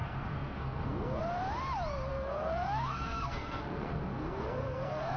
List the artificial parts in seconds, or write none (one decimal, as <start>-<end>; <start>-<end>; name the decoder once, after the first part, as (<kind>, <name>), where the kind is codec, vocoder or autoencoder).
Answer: 0.0-1.2 (codec, SNAC); 2.1-5.2